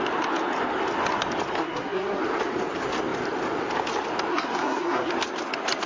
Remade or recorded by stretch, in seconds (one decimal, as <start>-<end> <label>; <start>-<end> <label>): 0.0-1.6 recorded; 1.6-2.2 remade; 2.2-4.3 recorded; 4.3-5.1 remade; 5.1-5.9 recorded